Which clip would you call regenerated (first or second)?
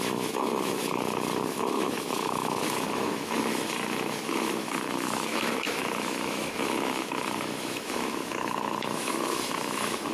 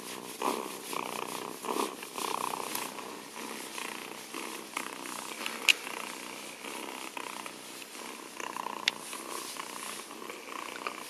first